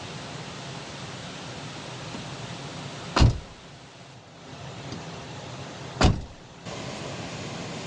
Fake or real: real